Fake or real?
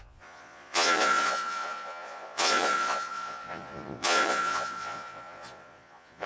fake